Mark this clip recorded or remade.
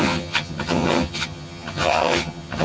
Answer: remade